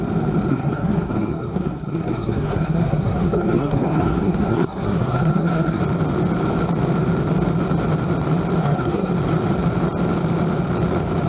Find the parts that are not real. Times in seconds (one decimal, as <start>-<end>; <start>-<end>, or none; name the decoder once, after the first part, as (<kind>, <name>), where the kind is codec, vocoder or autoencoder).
0.5-5.8 (codec, SNAC); 8.6-9.1

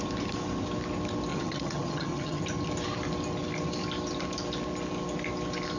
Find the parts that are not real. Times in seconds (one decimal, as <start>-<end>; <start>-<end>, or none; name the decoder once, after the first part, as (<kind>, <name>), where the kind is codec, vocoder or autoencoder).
1.3-2.4 (vocoder, HiFi-GAN)

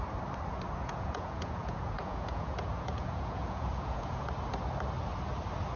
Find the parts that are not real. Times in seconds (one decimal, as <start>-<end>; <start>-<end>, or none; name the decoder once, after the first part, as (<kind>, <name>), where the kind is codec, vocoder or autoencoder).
0.8-4.3 (vocoder, Vocos)

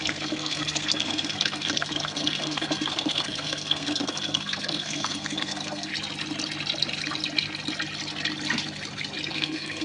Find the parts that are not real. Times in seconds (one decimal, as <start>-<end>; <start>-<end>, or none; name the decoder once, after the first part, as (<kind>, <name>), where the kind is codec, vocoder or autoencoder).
0.0-5.9 (codec, SNAC); 9.3-9.8

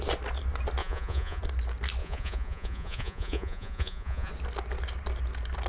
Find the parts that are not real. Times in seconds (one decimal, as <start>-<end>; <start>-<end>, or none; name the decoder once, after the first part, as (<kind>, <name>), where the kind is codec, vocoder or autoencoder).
0.8-1.4 (vocoder, Vocos); 2.0-4.3

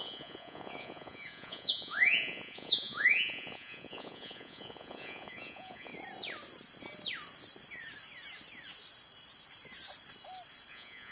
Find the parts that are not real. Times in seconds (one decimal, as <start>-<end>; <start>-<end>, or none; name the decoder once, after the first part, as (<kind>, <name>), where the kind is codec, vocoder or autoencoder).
0.0-5.9 (vocoder, Vocos); 10.7-11.1

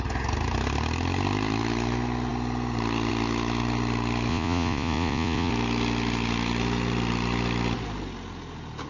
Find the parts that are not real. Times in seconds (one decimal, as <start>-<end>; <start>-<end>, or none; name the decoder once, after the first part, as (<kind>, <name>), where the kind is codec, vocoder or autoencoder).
4.3-5.5 (vocoder, Vocos)

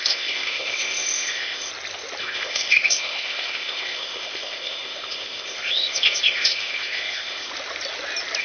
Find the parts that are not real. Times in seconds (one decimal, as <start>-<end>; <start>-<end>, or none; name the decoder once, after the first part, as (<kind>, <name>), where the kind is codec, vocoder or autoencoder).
0.0-1.7 (codec, ZipCodec); 2.2-7.5